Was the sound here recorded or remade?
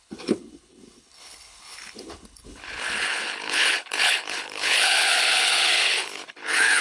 remade